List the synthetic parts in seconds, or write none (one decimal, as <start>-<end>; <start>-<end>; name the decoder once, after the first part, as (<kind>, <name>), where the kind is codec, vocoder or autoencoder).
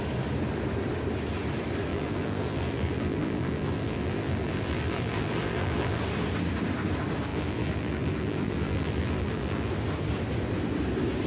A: 1.9-6.0 (vocoder, BigVGAN v2); 7.3-9.7